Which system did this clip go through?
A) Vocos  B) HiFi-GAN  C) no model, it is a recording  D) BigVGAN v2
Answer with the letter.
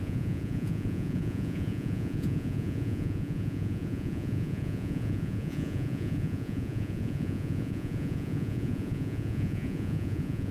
A